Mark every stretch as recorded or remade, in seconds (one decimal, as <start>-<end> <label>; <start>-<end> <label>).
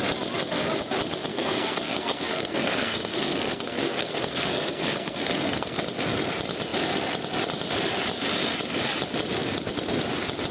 0.0-1.3 recorded; 1.3-5.8 remade; 5.8-10.5 recorded